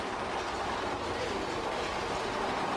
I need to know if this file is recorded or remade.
recorded